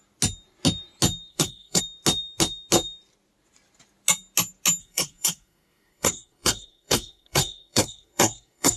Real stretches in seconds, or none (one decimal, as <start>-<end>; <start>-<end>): 0.0-1.3; 1.8-4.8